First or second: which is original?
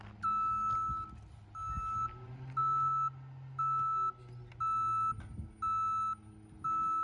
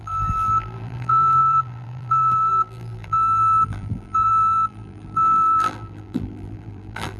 first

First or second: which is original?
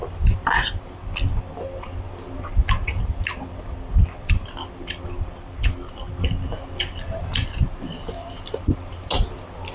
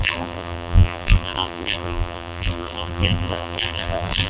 first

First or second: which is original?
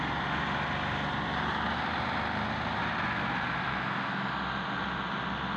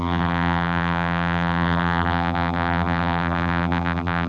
first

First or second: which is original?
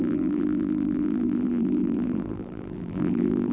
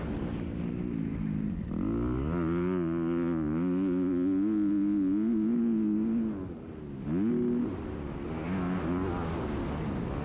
second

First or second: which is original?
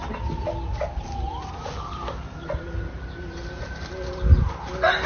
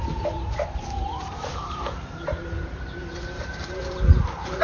first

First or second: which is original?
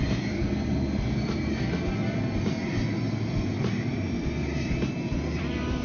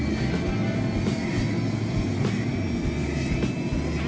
second